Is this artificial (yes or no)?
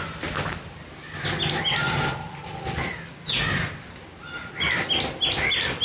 no